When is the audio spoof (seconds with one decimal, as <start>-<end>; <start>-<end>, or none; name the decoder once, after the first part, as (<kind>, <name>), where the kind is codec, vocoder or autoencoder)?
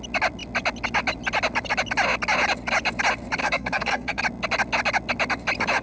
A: 3.4-4.2 (codec, SNAC)